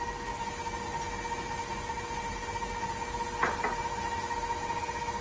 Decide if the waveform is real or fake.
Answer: real